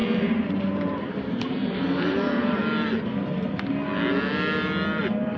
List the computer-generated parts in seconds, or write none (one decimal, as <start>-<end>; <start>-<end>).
0.0-2.6; 5.0-5.4